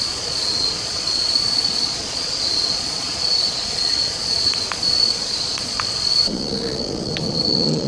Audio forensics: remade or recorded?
remade